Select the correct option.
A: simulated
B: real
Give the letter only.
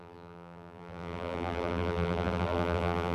A